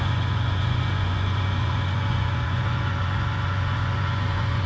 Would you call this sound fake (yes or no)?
yes